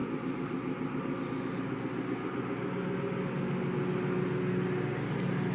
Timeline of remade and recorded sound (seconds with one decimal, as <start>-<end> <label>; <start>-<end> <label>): 0.0-5.5 recorded